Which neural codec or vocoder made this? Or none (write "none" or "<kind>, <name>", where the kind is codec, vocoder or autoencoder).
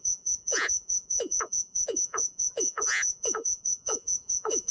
vocoder, Vocos